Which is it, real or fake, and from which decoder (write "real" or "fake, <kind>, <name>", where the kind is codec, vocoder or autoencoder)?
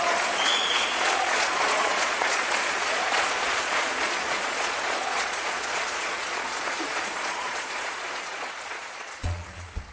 fake, vocoder, Vocos